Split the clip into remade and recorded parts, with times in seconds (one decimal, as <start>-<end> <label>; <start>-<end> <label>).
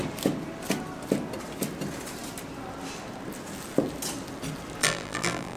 0.0-4.8 recorded; 4.8-5.6 remade